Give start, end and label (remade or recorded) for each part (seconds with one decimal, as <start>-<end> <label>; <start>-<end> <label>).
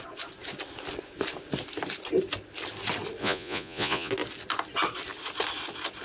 0.0-3.2 recorded; 3.2-4.1 remade; 4.1-6.0 recorded